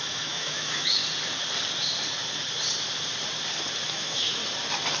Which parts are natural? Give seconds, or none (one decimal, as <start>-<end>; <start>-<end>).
1.0-3.9; 4.4-5.0